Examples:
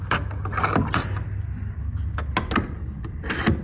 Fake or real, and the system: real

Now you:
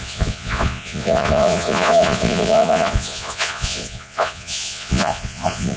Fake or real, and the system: fake, vocoder, Vocos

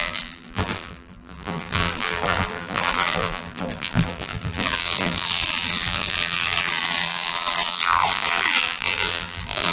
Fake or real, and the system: fake, vocoder, BigVGAN v2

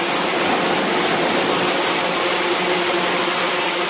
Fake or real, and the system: real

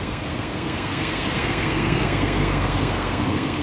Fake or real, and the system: fake, codec, SNAC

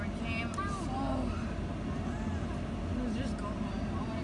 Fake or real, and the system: real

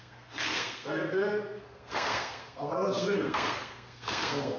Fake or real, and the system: fake, codec, SNAC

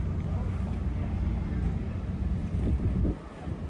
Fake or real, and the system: real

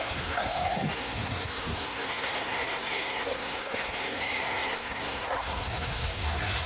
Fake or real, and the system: fake, codec, SNAC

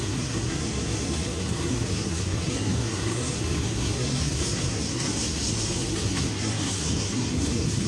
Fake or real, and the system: fake, codec, SNAC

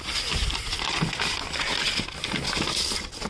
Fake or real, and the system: real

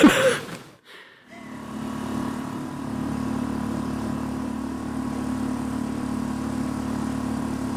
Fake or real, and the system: fake, vocoder, BigVGAN v2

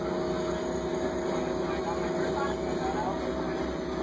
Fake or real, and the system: real